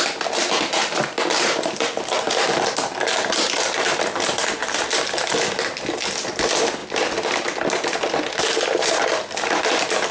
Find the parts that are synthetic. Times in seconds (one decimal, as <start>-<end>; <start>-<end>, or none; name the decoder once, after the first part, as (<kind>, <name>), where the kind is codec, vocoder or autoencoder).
0.8-4.9 (vocoder, BigVGAN v2)